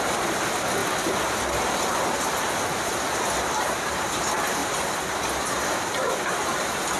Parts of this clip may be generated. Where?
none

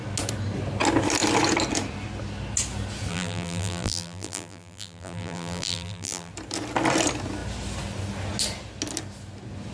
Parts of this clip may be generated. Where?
3.1-6.3 (vocoder, BigVGAN v2)

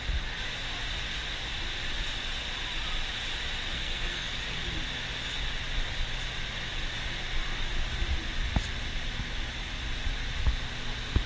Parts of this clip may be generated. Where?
3.6-4.3 (codec, SNAC)